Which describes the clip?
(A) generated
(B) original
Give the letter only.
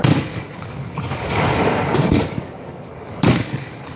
A